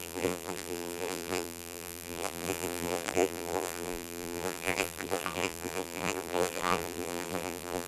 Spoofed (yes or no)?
yes